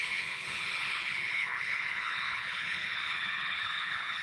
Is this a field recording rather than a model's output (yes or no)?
no